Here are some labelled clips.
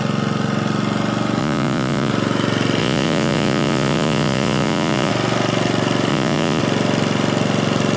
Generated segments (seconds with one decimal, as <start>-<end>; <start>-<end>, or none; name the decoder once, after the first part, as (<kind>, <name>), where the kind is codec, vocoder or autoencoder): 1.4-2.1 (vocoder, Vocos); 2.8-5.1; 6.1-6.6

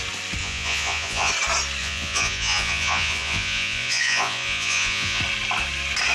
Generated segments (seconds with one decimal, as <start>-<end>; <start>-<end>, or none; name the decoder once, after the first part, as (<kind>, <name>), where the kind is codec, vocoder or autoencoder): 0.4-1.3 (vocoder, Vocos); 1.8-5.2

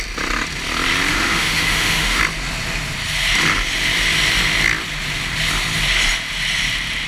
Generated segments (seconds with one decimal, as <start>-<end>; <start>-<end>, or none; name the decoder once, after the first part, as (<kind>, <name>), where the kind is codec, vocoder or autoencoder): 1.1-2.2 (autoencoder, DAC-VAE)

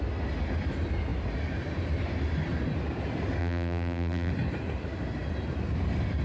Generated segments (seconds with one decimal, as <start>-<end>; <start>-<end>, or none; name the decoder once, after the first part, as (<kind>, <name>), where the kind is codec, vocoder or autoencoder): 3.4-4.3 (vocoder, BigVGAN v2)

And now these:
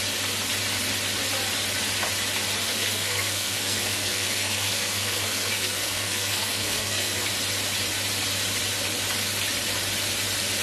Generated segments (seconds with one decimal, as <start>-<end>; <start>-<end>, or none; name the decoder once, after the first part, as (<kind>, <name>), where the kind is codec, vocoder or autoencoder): 2.7-7.3 (codec, SNAC)

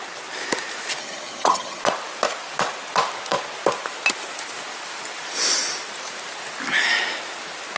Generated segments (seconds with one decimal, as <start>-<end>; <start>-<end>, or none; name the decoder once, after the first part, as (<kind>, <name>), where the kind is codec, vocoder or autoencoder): 1.0-1.8 (vocoder, HiFi-GAN)

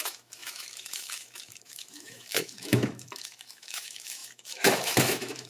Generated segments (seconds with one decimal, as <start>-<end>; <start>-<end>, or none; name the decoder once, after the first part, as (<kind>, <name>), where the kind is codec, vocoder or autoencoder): 0.0-5.5 (autoencoder, DAC-VAE)

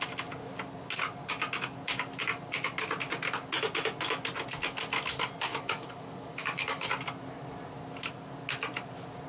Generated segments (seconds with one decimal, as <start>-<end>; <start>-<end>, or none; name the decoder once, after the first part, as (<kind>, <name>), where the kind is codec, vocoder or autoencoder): 5.5-6.9 (codec, DAC)